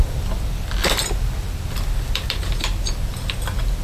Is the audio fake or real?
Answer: fake